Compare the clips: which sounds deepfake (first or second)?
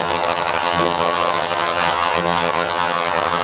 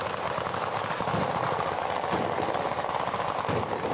first